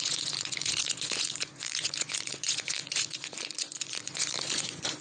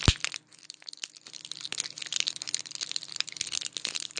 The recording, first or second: second